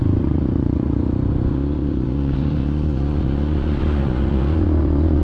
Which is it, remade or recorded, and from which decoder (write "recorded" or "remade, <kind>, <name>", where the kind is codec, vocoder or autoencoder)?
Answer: remade, vocoder, Vocos